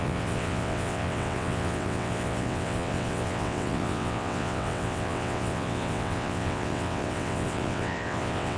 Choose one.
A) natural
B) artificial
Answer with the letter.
B